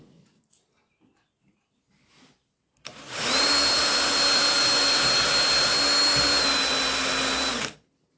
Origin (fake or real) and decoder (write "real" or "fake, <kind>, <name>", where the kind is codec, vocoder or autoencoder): real